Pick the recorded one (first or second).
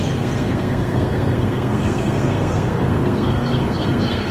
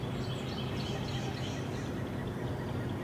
second